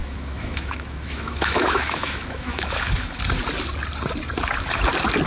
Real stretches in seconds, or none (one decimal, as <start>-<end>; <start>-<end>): 3.2-5.3